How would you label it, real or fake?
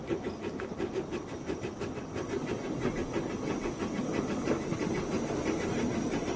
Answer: real